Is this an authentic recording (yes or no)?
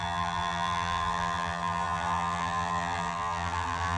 no